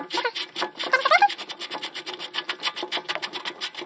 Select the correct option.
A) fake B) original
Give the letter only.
B